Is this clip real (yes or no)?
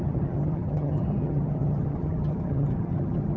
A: no